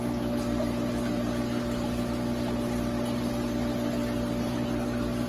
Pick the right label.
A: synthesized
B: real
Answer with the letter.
B